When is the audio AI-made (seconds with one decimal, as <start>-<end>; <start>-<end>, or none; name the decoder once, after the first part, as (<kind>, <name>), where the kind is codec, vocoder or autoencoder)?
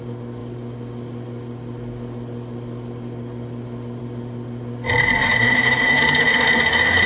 5.2-6.2 (autoencoder, DAC-VAE)